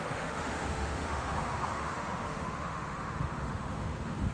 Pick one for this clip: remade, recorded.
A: remade